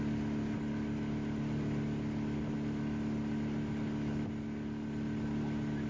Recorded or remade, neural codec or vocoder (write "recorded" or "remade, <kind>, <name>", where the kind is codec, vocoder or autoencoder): recorded